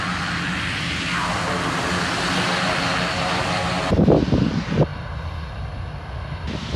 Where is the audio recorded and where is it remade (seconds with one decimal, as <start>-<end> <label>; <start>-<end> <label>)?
0.0-6.8 recorded

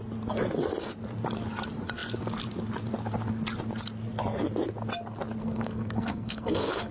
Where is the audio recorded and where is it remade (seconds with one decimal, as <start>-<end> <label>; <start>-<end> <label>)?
0.0-5.4 recorded; 5.4-6.9 remade